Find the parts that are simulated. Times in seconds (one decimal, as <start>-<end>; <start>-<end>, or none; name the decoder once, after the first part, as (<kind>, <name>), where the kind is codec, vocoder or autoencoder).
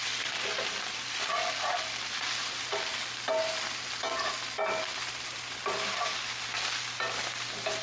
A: none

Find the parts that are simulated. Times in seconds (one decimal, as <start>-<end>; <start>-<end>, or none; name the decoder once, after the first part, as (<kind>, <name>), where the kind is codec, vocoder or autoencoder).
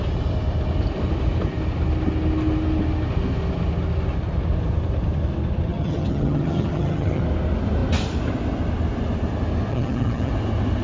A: 5.7-7.2 (vocoder, HiFi-GAN); 9.7-10.3